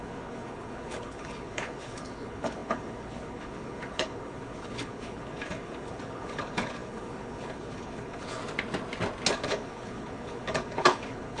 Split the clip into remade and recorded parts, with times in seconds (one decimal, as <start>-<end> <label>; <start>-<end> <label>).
0.0-8.4 remade; 8.4-9.3 recorded; 9.3-11.4 remade